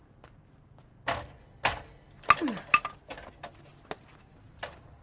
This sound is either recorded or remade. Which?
recorded